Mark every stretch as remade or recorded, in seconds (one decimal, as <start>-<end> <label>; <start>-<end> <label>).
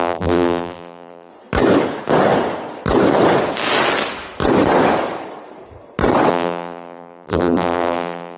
0.0-1.3 remade; 1.3-6.3 recorded; 6.3-8.4 remade